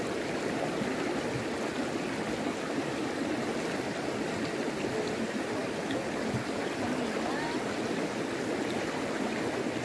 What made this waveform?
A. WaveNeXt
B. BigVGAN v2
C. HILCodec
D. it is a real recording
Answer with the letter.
D